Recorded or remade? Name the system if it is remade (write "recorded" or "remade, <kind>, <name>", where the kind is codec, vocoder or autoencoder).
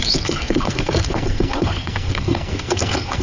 remade, codec, SNAC